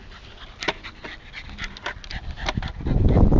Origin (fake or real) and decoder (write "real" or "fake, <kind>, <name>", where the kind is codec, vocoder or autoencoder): real